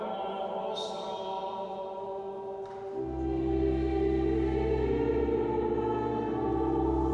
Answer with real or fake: real